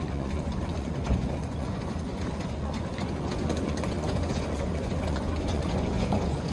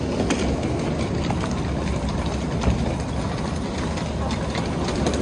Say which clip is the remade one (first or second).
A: first